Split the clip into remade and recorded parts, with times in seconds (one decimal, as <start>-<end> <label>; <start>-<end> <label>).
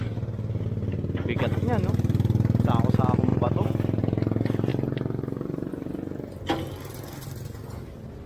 0.0-3.3 recorded; 3.3-4.0 remade; 4.0-4.7 recorded; 4.7-5.7 remade; 5.7-8.3 recorded